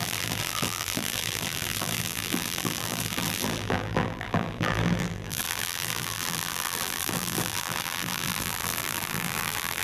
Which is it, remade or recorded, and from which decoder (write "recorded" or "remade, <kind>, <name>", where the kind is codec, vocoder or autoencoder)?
remade, vocoder, BigVGAN v2